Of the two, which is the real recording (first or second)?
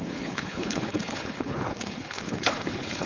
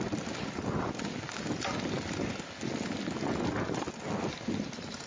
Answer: second